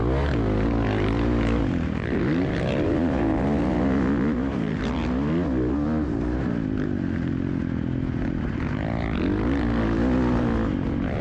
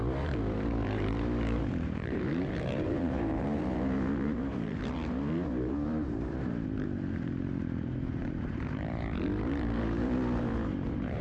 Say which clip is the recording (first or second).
first